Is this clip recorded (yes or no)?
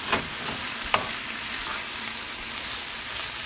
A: yes